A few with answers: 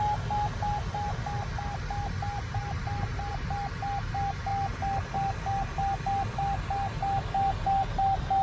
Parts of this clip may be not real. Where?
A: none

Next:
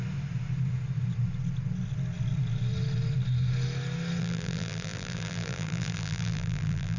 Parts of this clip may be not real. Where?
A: 4.2-7.0 (vocoder, BigVGAN v2)

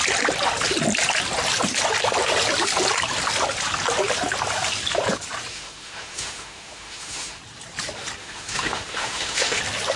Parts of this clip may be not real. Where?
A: 5.5-7.4 (autoencoder, DAC-VAE); 8.2-9.6

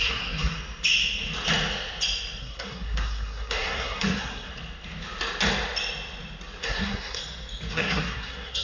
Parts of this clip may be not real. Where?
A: 0.0-0.6 (codec, SNAC); 2.4-4.5; 6.6-7.2; 7.7-8.6

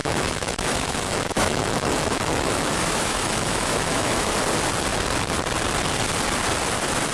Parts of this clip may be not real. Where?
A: 0.0-4.3 (autoencoder, DAC-VAE)